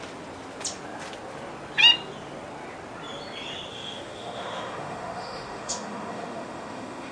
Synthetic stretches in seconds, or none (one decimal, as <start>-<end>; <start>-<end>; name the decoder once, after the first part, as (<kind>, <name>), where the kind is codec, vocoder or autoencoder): 3.7-7.1 (autoencoder, DAC-VAE)